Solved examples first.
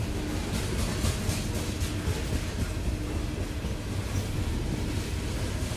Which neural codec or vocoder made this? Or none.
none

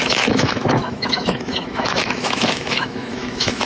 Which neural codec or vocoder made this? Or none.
autoencoder, DAC-VAE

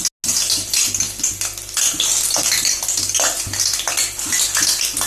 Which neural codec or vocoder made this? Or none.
none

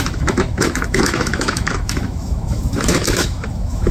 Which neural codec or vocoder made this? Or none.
autoencoder, DAC-VAE